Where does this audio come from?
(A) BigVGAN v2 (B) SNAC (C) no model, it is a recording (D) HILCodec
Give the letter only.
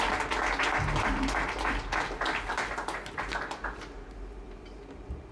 C